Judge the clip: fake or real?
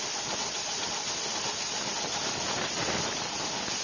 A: real